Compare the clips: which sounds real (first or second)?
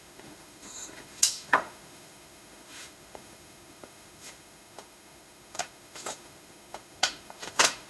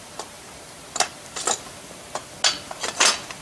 second